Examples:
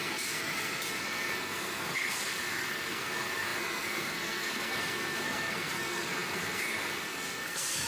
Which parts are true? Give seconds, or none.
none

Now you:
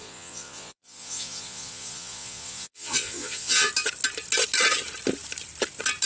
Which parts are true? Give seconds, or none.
3.7-6.1

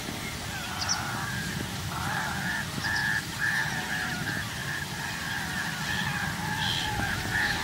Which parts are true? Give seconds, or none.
4.6-7.0

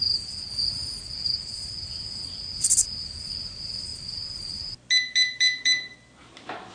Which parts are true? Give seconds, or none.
0.0-0.5; 1.0-6.7